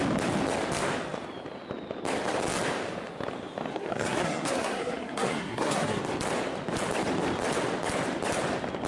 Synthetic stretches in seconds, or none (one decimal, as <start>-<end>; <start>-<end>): 3.7-6.0